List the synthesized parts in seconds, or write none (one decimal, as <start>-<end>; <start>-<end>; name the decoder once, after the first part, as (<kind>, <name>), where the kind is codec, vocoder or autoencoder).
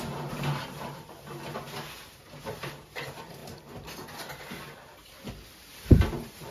0.0-3.4 (vocoder, BigVGAN v2); 5.7-6.5